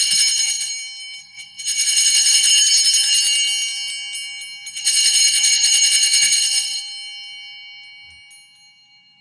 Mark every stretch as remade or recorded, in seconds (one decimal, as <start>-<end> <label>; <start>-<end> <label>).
0.0-0.7 remade; 0.7-1.2 recorded; 1.2-2.5 remade; 2.5-4.7 recorded; 4.7-6.8 remade; 6.8-9.2 recorded